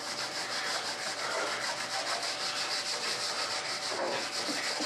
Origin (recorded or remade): remade